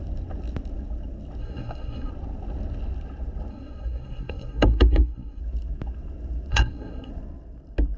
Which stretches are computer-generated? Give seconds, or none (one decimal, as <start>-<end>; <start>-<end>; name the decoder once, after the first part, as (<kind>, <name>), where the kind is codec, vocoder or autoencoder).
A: 1.4-2.1 (codec, SNAC); 3.5-5.4; 6.5-7.1